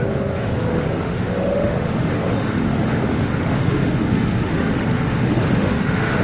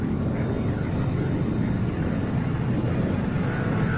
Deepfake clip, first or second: first